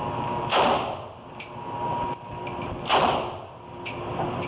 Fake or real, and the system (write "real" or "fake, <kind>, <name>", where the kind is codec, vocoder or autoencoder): real